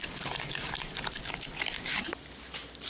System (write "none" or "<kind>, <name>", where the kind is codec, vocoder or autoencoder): vocoder, BigVGAN v2